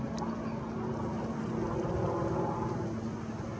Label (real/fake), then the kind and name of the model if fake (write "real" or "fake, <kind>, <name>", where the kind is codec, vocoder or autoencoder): real